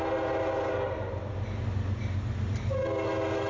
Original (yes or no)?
yes